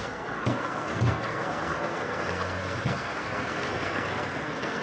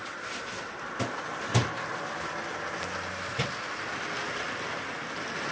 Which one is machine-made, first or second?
first